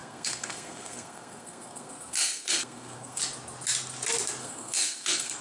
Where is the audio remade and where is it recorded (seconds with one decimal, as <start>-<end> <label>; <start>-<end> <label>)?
0.0-3.2 remade; 3.2-4.4 recorded; 4.4-5.4 remade